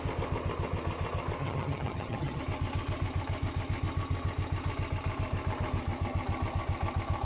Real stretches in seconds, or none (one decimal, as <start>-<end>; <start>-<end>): 0.0-1.4; 2.4-7.2